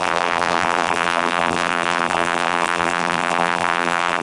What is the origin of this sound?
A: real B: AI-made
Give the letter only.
B